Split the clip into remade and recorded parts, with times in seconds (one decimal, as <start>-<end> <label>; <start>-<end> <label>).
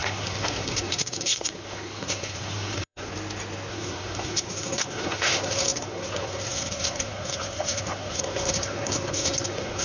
0.0-3.1 remade; 3.1-3.7 recorded; 3.7-9.8 remade